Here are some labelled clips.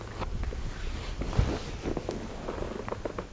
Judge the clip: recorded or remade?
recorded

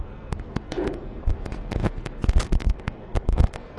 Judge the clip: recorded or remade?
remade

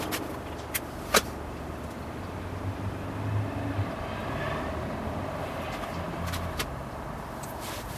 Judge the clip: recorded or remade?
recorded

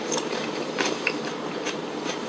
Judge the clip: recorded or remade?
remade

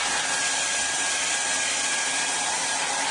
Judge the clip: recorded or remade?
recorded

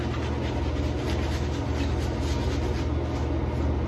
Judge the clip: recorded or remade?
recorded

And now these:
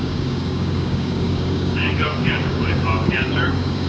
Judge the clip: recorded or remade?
remade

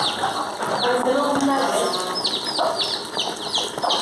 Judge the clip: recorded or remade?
recorded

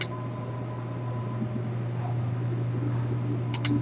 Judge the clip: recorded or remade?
recorded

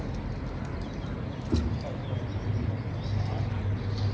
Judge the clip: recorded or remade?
recorded